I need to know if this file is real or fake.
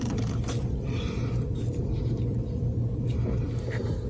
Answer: real